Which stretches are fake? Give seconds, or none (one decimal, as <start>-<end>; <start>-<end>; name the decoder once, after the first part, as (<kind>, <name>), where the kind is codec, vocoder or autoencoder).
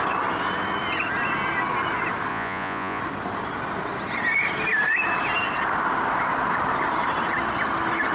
2.3-3.0 (vocoder, Vocos)